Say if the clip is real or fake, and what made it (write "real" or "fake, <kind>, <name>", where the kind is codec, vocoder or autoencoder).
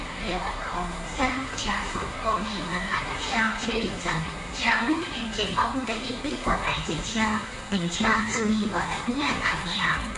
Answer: fake, codec, SNAC